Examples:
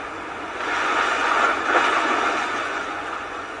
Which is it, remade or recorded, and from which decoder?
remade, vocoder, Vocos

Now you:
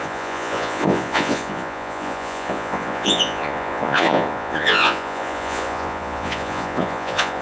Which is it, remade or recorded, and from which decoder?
remade, vocoder, Vocos